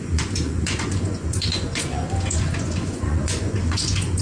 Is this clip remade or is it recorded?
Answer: remade